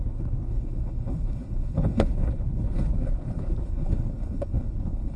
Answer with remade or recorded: remade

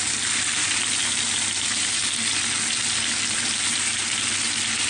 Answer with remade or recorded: recorded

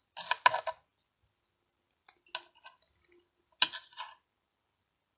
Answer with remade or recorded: recorded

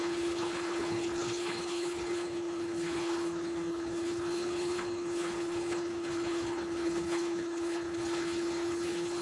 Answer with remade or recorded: remade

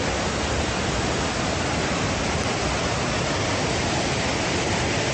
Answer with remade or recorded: recorded